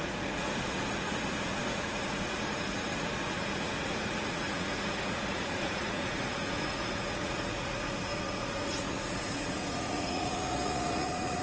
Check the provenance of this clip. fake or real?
fake